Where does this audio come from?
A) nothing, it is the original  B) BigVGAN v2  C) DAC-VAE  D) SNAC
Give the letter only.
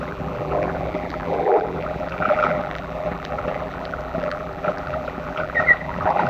B